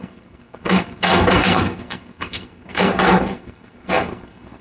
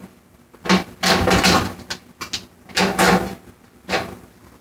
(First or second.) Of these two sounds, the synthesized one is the first